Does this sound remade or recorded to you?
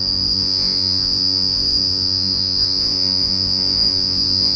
remade